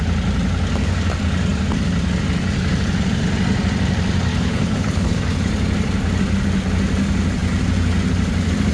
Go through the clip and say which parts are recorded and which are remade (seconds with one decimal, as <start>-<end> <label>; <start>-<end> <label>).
0.0-4.3 recorded; 4.3-5.1 remade; 5.1-8.7 recorded